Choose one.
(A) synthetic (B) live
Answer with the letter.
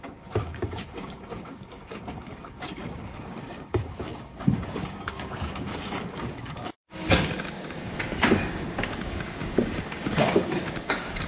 A